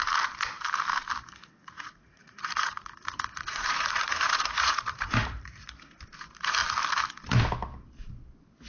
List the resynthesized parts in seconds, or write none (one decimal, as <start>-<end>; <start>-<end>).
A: 1.6-5.7

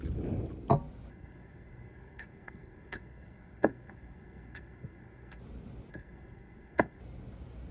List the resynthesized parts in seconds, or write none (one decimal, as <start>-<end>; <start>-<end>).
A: 1.1-5.4; 5.9-7.0

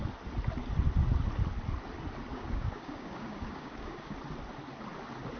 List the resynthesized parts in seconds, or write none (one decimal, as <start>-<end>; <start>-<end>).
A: 2.3-4.1

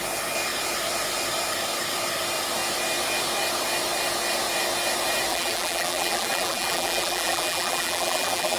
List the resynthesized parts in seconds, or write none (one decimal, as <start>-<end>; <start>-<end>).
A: 5.3-8.6

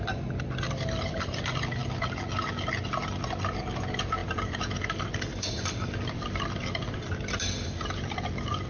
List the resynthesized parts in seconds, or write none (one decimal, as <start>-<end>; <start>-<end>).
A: none

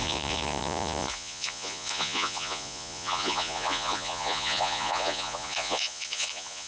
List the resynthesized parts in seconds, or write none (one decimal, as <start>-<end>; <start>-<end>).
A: 0.0-6.7

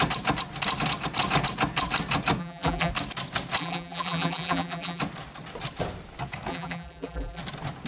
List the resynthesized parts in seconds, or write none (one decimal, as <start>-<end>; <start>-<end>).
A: 2.4-2.9; 3.6-5.0; 6.5-7.4